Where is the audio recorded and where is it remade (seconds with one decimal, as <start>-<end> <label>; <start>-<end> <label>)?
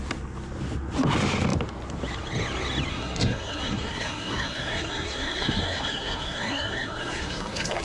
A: 0.0-2.9 recorded; 2.9-7.8 remade